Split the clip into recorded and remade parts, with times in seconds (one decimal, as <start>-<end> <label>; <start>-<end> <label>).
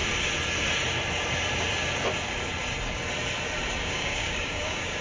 0.0-3.8 recorded; 3.8-5.0 remade